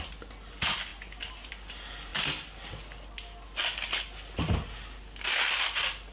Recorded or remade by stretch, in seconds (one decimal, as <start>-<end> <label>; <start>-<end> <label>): 0.0-6.1 recorded